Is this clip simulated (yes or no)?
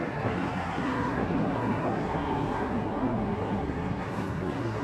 yes